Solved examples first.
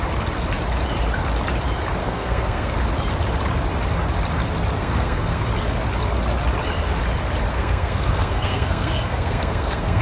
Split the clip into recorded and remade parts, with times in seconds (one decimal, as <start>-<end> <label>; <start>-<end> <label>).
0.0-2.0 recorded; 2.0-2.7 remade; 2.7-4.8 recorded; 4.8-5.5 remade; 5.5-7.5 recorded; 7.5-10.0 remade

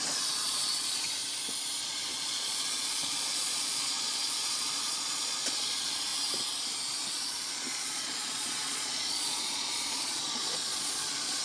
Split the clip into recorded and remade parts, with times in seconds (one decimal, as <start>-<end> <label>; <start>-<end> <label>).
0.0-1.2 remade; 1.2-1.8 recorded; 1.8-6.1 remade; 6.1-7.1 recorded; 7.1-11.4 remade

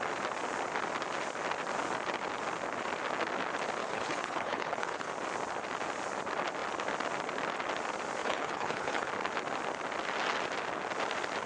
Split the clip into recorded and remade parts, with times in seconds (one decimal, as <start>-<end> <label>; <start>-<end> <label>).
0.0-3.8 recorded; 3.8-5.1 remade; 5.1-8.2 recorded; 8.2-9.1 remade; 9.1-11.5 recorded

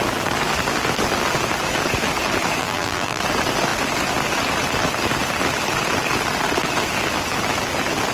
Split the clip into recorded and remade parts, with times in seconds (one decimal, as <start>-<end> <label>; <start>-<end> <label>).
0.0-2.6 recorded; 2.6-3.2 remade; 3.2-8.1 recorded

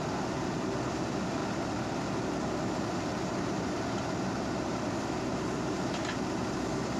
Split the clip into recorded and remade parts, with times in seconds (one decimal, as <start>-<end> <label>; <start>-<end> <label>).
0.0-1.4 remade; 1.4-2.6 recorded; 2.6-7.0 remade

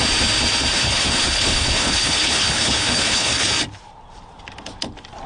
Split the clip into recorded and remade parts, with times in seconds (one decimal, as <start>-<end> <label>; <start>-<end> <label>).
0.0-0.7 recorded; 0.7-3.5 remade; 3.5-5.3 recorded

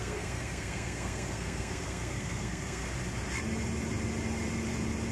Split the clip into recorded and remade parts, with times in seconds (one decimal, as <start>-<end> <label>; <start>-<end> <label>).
0.0-2.8 remade; 2.8-5.1 recorded

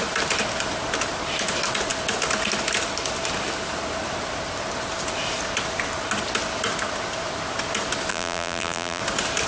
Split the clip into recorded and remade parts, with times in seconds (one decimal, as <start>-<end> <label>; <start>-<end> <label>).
0.0-8.1 recorded; 8.1-9.0 remade; 9.0-9.5 recorded